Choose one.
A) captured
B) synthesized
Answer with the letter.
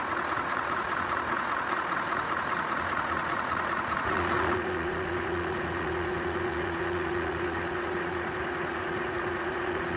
B